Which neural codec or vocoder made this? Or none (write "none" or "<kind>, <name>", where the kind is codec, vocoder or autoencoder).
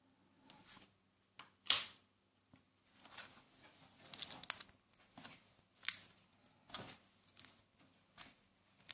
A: none